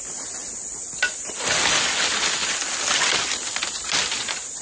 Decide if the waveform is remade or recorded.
recorded